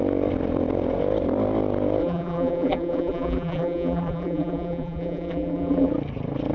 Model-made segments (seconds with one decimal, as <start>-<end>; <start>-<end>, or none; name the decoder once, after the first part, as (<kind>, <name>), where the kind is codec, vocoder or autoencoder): 2.0-5.9 (vocoder, BigVGAN v2)

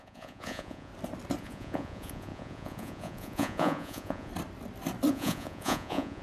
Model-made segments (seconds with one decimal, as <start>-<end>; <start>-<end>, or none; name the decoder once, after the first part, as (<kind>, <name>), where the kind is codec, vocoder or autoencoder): 0.0-0.9 (vocoder, Vocos); 1.4-4.3; 5.1-6.2

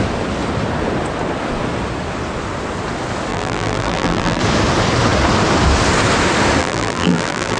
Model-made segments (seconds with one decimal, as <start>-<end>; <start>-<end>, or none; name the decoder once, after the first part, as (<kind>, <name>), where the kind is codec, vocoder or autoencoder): 3.3-4.4 (vocoder, BigVGAN v2); 6.6-7.6